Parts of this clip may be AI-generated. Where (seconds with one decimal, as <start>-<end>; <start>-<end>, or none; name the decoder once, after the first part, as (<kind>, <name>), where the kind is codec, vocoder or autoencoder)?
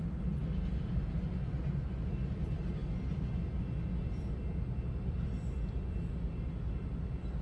none